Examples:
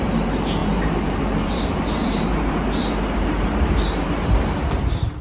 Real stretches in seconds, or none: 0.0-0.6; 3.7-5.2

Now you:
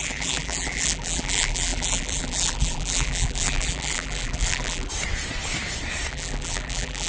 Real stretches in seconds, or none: 4.9-6.1

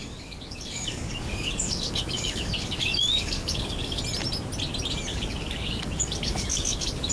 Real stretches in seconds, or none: 4.0-5.1

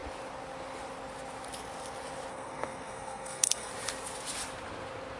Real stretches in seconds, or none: 0.0-2.3; 3.7-5.2

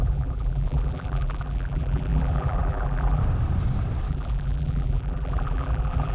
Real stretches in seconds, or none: 3.2-4.1

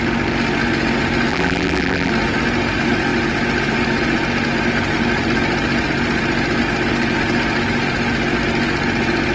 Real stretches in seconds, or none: 0.0-1.3; 2.1-9.3